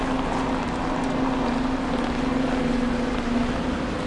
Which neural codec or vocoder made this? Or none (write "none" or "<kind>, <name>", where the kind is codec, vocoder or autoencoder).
none